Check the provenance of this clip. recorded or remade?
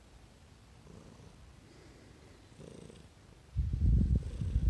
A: recorded